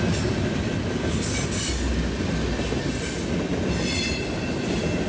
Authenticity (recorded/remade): recorded